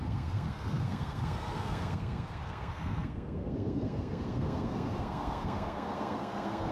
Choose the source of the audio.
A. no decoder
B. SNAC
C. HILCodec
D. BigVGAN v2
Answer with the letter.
B